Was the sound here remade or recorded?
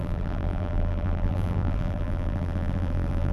remade